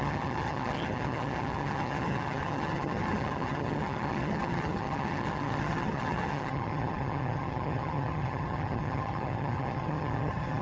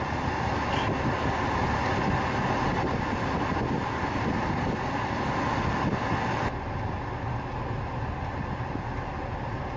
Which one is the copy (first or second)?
first